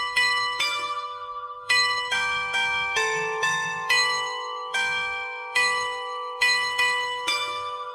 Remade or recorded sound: remade